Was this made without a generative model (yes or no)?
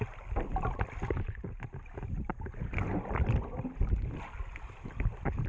yes